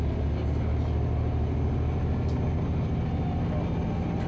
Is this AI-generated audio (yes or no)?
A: no